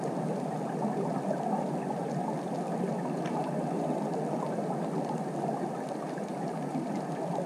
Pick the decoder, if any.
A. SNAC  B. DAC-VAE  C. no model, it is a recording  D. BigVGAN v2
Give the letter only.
C